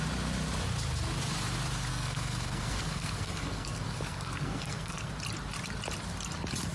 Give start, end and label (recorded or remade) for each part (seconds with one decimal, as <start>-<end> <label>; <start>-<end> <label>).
0.0-1.9 recorded; 1.9-5.1 remade; 5.1-6.7 recorded